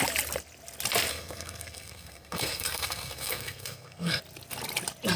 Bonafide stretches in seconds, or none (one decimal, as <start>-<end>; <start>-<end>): 0.0-1.1; 4.2-5.2

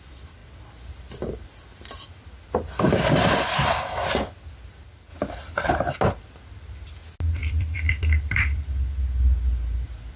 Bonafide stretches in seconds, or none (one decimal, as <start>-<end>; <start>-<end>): 0.0-5.1; 5.7-7.4; 8.8-10.2

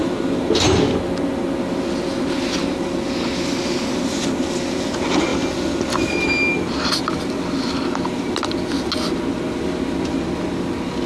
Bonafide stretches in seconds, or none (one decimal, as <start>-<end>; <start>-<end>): 0.0-11.1

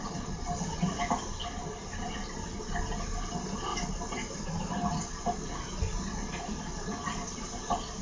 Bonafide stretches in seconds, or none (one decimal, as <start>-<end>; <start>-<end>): 0.0-8.0

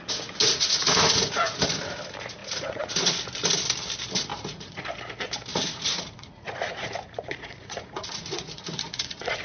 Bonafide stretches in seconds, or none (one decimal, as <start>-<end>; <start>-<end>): 0.0-0.4; 1.7-2.4; 2.9-4.3; 4.9-5.5

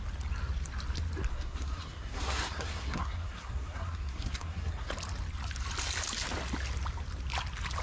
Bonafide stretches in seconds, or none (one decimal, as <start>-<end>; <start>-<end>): 0.0-1.3; 4.9-7.8

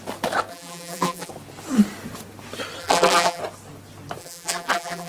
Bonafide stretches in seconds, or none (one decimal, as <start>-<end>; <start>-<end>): 0.0-0.5; 1.3-2.8; 3.4-4.2

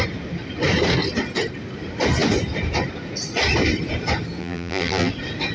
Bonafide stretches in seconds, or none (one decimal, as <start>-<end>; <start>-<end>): 0.0-4.4; 5.1-5.5